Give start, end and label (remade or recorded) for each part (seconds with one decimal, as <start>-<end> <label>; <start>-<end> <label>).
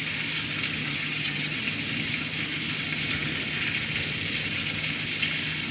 0.0-0.8 recorded; 0.8-1.6 remade; 1.6-5.7 recorded